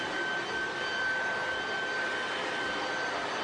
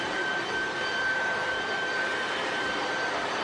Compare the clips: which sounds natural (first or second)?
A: first